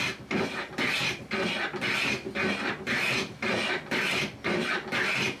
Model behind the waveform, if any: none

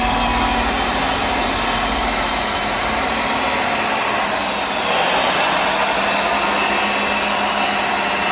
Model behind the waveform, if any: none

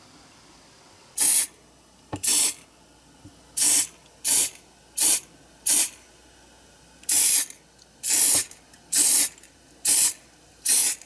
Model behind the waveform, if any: none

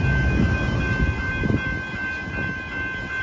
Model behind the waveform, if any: none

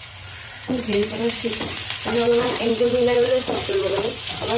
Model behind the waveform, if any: vocoder, Vocos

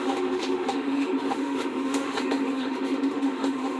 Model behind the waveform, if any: autoencoder, DAC-VAE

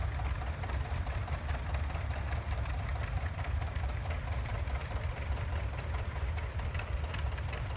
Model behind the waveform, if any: vocoder, BigVGAN v2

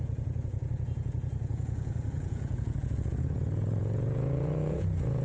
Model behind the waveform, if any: vocoder, Vocos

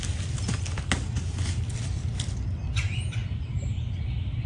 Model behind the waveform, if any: none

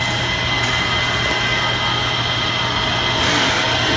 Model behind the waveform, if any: none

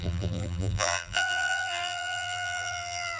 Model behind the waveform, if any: vocoder, BigVGAN v2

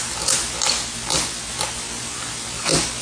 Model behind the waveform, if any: none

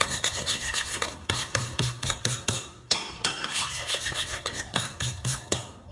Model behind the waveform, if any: codec, SNAC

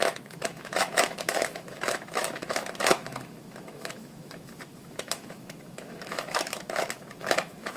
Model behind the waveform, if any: autoencoder, DAC-VAE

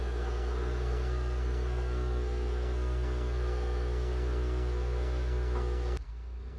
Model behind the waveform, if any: codec, SNAC